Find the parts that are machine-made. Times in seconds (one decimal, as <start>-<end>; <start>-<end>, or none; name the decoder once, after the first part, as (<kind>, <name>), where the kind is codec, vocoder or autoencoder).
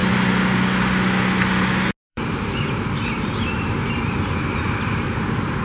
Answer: 2.1-5.6 (vocoder, BigVGAN v2)